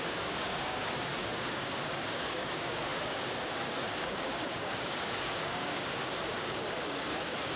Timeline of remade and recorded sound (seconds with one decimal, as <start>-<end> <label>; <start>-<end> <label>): 0.0-7.6 remade